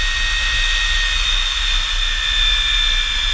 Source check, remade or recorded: recorded